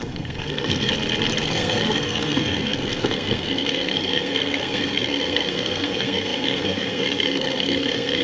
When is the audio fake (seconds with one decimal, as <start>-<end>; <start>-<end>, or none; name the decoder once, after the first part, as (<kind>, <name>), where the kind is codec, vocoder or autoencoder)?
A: 0.0-0.9 (codec, SNAC); 1.4-8.2